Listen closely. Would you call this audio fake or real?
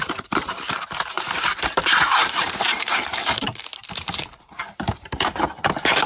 fake